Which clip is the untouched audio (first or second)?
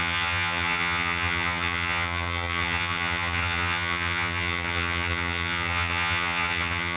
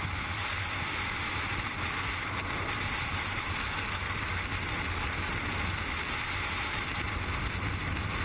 second